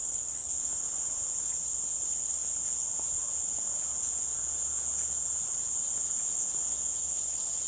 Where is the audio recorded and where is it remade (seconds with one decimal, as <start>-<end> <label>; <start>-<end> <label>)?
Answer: 0.0-2.4 recorded; 2.4-7.0 remade; 7.0-7.7 recorded